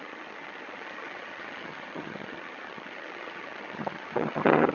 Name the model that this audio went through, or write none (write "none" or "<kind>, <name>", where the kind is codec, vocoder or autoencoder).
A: vocoder, HiFi-GAN